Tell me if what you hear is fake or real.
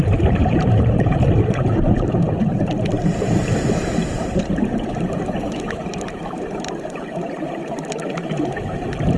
fake